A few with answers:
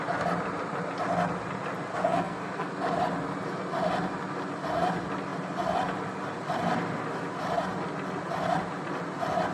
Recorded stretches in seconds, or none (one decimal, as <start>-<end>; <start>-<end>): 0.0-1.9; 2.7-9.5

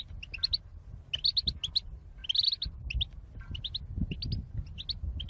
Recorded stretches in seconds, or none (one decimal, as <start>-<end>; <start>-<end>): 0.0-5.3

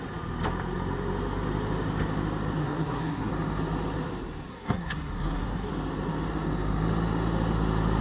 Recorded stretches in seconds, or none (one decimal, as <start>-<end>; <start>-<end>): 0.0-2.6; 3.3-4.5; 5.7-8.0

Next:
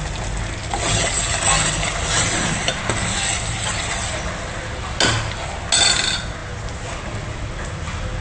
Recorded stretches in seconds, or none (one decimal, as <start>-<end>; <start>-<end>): 0.0-8.2

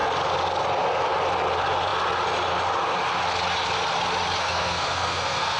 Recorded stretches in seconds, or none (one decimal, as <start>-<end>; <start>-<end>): 0.0-4.4